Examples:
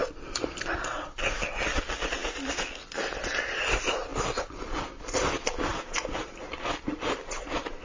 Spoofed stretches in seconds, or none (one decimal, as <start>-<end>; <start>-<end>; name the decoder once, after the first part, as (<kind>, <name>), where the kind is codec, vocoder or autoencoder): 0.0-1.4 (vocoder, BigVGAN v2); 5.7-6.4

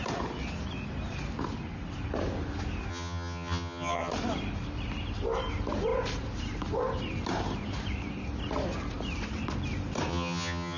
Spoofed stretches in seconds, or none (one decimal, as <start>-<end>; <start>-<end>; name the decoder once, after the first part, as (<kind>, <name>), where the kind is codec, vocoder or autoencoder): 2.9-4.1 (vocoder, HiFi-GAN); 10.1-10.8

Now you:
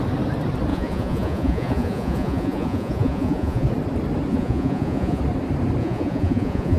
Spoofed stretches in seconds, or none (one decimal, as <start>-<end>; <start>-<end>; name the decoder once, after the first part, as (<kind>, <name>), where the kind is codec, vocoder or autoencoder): 0.7-3.7 (vocoder, Vocos); 4.3-5.2; 5.8-6.8

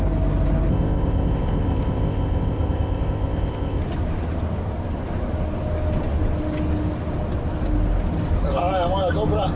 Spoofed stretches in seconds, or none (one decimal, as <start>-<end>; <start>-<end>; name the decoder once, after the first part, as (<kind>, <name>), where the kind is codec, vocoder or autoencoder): 0.7-3.8 (codec, ZipCodec)

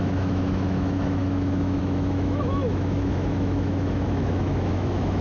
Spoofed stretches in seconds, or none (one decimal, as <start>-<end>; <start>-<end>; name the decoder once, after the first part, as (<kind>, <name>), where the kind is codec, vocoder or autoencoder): 0.0-5.2 (autoencoder, DAC-VAE)

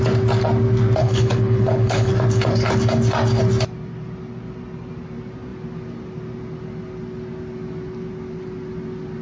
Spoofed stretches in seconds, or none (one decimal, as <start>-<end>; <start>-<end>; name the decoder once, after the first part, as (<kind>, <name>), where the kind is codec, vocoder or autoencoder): 1.0-2.1 (codec, HILCodec)